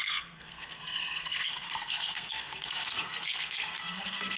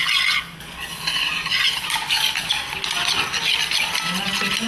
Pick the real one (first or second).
second